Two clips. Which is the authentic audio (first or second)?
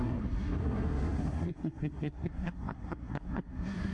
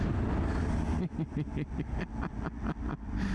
second